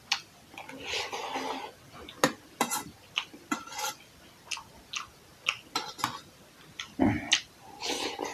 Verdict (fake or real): real